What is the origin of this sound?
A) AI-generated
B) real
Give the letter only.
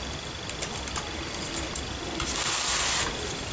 B